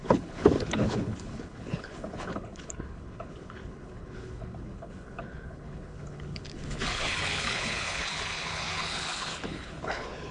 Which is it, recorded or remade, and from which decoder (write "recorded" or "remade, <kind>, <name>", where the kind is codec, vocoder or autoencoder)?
remade, codec, HILCodec